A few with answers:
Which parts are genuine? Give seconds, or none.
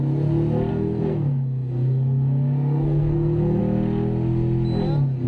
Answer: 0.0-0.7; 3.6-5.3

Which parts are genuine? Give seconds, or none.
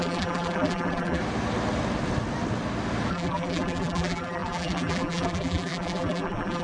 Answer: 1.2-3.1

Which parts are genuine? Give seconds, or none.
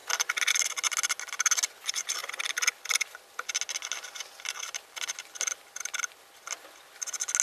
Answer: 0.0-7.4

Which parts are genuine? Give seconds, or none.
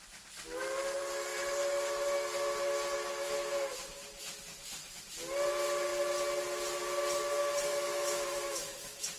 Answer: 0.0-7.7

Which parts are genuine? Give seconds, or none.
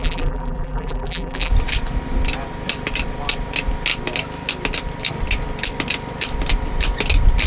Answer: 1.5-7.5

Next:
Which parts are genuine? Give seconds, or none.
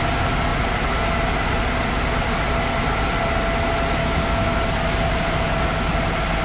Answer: 0.0-4.0; 4.5-6.4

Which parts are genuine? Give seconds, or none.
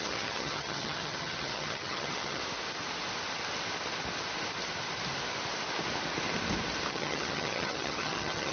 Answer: 2.4-6.9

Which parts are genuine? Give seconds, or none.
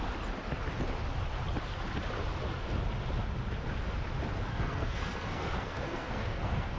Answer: 0.0-4.5